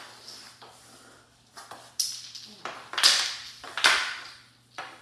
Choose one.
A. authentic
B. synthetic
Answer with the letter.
A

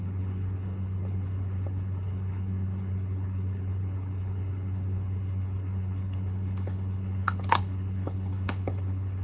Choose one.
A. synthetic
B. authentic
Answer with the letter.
A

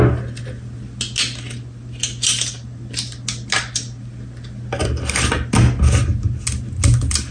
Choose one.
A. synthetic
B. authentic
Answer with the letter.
B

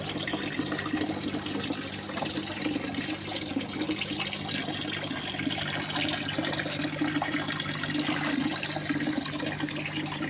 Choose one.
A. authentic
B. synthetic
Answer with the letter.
A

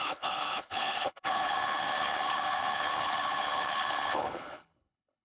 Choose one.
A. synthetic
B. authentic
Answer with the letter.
A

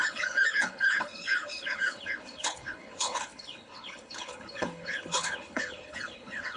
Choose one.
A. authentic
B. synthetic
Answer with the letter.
B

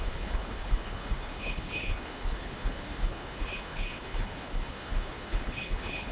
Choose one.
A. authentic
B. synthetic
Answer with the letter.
B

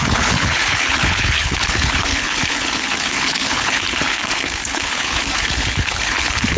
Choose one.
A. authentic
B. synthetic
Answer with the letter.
B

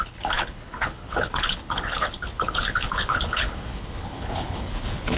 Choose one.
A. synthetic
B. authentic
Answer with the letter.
A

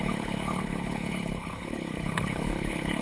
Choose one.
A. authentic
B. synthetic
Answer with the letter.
B